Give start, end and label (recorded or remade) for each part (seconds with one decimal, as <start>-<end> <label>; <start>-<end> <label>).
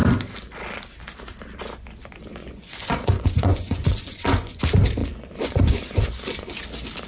0.0-2.4 recorded; 2.4-4.6 remade; 4.6-5.0 recorded; 5.0-6.6 remade; 6.6-7.1 recorded